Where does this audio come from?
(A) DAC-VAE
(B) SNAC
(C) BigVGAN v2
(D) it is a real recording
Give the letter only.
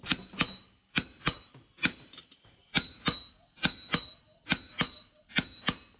D